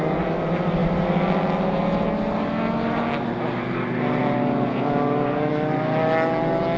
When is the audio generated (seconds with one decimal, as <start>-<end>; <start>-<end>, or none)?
none

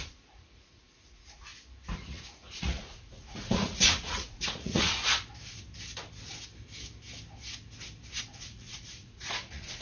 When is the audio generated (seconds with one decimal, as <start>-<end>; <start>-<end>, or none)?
0.0-1.5; 2.1-5.1; 8.1-9.8

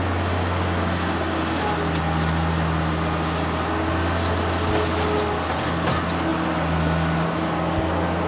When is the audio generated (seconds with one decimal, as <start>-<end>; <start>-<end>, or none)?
none

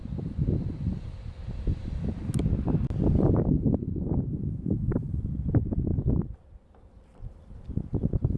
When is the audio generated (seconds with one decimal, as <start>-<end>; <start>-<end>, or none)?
5.9-7.6